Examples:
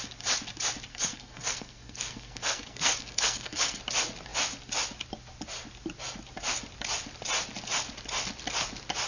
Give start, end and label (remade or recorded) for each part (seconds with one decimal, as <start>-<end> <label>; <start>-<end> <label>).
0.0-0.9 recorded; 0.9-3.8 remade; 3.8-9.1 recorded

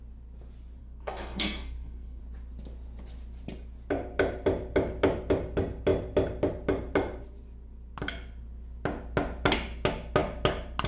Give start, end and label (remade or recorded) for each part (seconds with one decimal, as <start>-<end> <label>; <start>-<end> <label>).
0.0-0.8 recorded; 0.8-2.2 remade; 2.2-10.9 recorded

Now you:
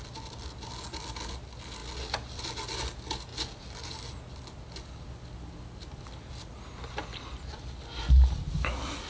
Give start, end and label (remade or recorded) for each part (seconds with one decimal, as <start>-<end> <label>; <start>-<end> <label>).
0.0-9.1 recorded

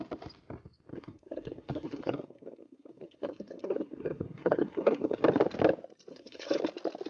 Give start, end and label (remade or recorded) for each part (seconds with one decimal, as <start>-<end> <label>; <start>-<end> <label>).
0.0-0.9 recorded; 0.9-5.2 remade; 5.2-6.1 recorded; 6.1-6.6 remade; 6.6-7.1 recorded

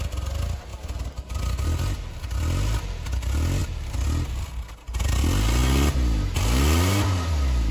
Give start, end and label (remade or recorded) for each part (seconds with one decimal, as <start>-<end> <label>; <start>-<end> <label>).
0.0-0.7 recorded; 0.7-3.0 remade; 3.0-3.6 recorded; 3.6-4.5 remade; 4.5-7.7 recorded

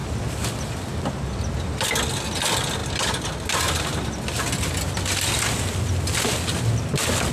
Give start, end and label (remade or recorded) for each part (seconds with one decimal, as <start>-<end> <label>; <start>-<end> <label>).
0.0-7.3 recorded

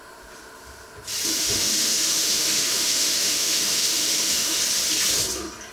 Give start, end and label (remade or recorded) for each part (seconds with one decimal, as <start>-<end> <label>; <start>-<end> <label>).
0.0-1.4 recorded; 1.4-4.6 remade; 4.6-5.7 recorded

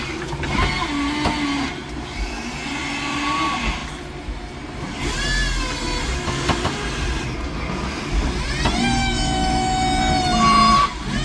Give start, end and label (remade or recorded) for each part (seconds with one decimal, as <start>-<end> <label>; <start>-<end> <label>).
0.0-9.0 recorded; 9.0-10.0 remade; 10.0-11.2 recorded